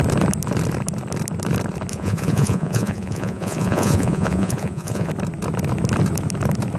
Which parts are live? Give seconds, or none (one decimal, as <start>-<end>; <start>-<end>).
0.0-1.9; 5.1-6.8